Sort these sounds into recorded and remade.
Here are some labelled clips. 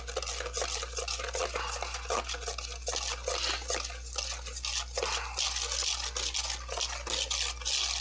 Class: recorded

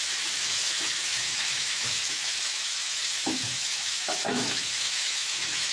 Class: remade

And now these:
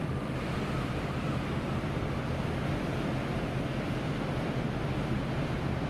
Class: recorded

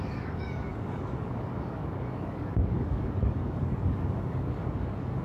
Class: remade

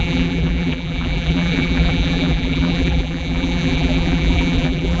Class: remade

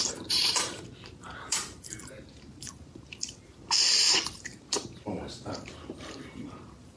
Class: remade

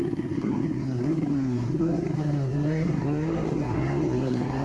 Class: remade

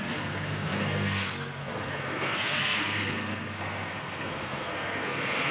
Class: remade